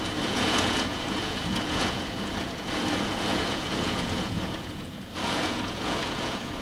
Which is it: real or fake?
fake